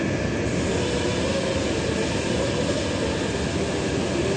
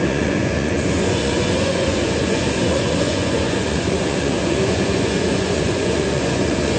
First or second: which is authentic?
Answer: first